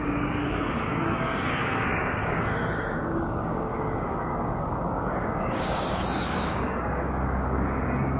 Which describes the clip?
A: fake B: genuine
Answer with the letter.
A